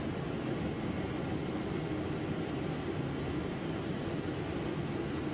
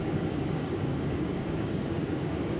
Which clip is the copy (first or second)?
second